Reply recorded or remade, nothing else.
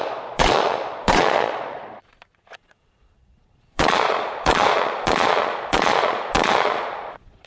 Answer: remade